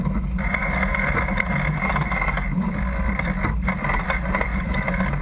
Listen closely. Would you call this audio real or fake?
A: real